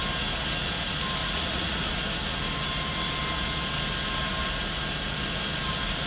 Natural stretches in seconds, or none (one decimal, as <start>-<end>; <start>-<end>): 0.0-1.2; 1.9-6.1